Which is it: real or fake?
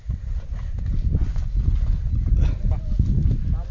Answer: real